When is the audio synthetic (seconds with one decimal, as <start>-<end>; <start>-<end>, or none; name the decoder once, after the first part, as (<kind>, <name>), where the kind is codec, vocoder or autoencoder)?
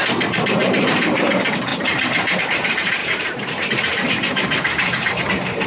0.6-1.2 (vocoder, BigVGAN v2); 1.7-2.4; 3.0-5.2